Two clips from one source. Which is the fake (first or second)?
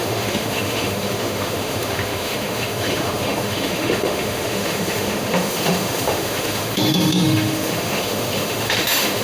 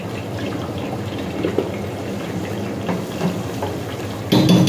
first